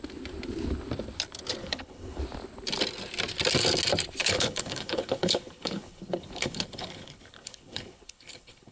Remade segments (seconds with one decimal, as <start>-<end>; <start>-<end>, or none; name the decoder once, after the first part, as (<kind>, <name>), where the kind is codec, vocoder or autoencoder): 1.6-2.2 (codec, HILCodec); 4.2-8.7